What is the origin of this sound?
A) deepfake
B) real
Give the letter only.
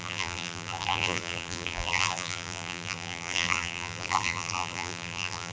A